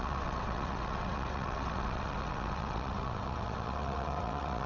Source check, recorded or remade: remade